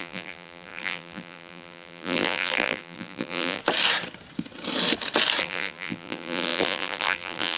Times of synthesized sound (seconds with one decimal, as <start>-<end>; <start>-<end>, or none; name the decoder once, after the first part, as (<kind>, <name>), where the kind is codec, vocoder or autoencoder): 0.0-3.6 (vocoder, BigVGAN v2); 5.4-7.6